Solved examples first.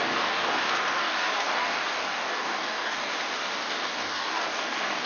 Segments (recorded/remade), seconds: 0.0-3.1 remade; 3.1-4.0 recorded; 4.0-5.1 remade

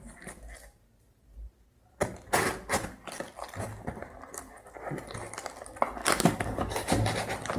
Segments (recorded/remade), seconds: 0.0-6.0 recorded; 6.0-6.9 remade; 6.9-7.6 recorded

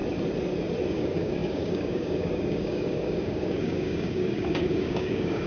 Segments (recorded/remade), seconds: 0.0-0.9 recorded; 0.9-5.5 remade

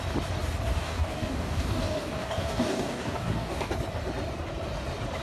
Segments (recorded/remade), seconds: 0.0-0.8 recorded; 0.8-3.7 remade; 3.7-5.2 recorded